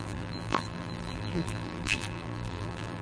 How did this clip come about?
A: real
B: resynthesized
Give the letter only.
B